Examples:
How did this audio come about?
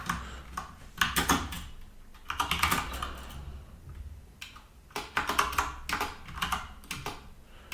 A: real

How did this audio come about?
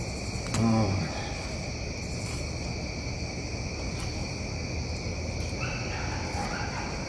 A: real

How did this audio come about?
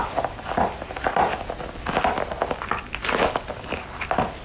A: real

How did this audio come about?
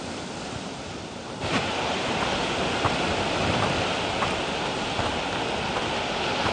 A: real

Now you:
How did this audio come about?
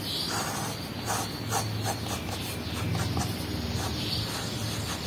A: real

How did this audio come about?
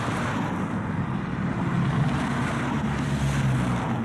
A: real